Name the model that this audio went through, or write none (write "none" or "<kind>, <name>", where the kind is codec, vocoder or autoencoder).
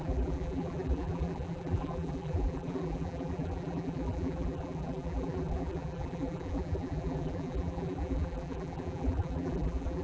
vocoder, BigVGAN v2